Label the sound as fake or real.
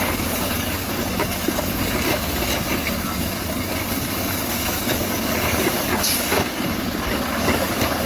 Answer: fake